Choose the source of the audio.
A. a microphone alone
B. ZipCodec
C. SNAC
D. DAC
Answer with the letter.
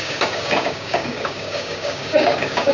D